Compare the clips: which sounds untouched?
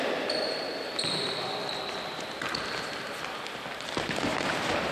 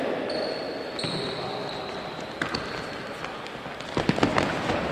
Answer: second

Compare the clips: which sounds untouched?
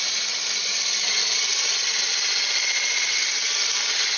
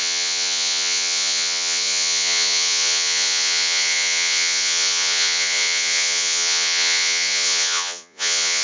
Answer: first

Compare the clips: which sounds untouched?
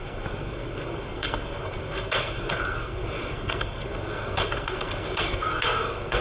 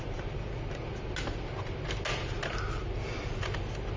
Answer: second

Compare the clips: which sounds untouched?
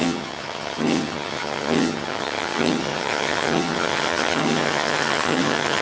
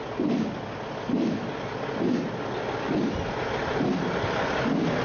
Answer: second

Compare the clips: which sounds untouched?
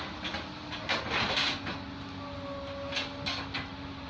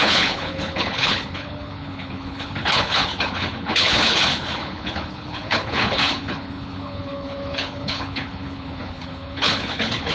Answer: first